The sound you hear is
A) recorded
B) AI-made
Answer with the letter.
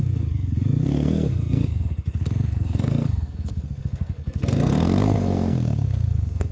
B